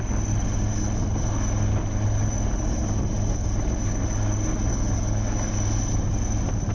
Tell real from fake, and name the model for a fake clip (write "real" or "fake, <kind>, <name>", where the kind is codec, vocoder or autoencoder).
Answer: real